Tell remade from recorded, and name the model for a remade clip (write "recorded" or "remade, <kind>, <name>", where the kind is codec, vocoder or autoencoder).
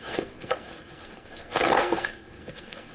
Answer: remade, codec, SNAC